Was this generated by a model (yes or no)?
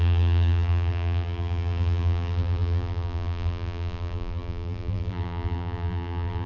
yes